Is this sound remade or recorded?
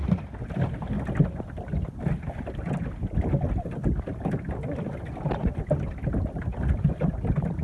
recorded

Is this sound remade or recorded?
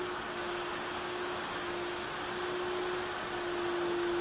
recorded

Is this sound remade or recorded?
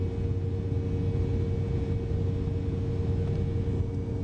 recorded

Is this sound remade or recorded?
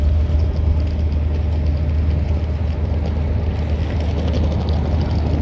recorded